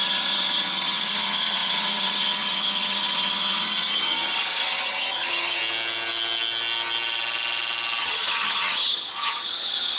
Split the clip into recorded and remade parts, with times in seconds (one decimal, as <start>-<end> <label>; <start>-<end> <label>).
0.0-5.6 remade; 5.6-8.0 recorded; 8.0-10.0 remade